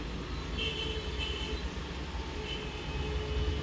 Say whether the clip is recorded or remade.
recorded